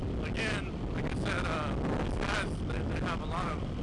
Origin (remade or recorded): recorded